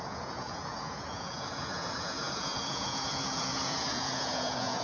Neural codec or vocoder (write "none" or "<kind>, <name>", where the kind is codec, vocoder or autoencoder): vocoder, Vocos